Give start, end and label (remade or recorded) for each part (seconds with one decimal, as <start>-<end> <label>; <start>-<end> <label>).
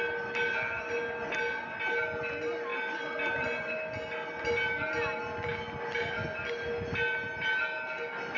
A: 0.0-8.4 recorded